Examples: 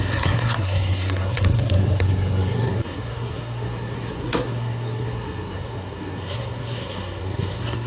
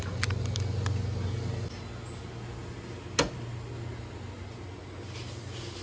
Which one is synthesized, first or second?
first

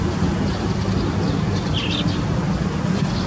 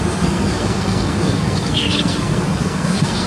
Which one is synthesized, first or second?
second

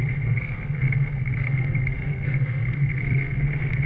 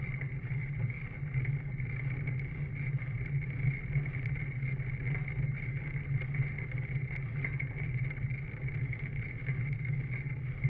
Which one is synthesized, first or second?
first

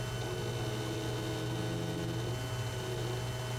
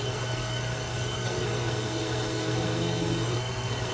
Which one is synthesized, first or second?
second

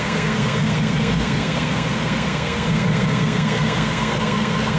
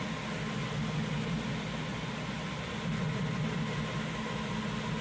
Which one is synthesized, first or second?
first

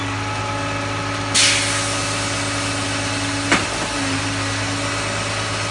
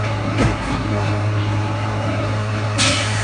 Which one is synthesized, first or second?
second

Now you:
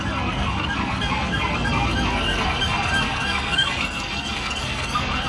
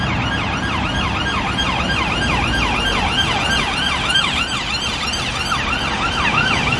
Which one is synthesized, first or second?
first